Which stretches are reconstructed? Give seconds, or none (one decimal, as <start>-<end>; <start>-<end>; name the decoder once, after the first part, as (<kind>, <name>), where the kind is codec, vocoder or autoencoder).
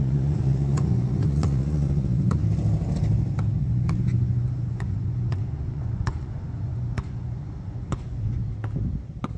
0.0-2.4 (vocoder, Vocos); 3.6-8.4